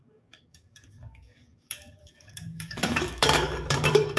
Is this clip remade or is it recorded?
remade